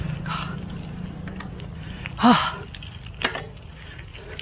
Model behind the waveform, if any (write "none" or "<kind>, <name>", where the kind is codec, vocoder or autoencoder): none